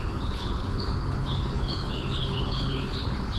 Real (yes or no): no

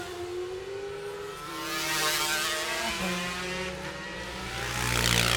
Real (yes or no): yes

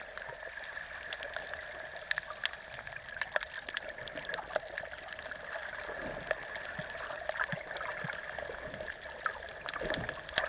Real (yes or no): yes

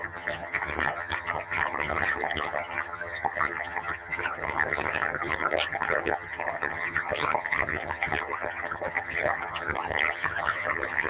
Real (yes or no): no